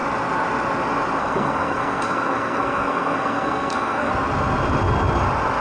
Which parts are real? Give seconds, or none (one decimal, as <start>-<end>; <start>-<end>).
0.0-1.2; 4.1-5.6